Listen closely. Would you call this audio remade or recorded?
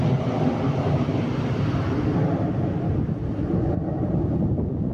recorded